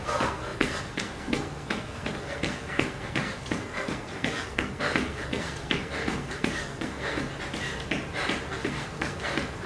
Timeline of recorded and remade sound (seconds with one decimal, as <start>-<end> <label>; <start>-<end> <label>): 0.0-7.3 remade; 7.3-8.5 recorded; 8.5-9.7 remade